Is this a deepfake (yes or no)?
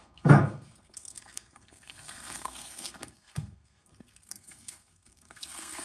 yes